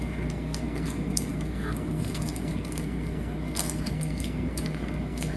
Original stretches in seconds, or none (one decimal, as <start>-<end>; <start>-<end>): none